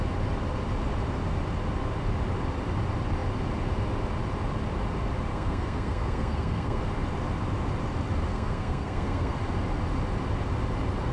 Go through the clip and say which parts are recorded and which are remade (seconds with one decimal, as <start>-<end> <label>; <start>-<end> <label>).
0.0-5.3 recorded; 5.3-6.8 remade; 6.8-8.3 recorded; 8.3-9.4 remade; 9.4-11.1 recorded